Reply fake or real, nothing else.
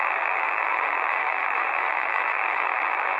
fake